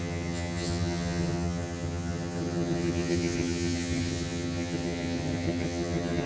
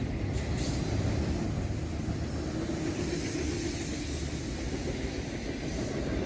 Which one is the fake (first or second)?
first